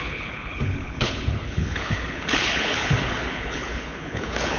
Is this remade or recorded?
remade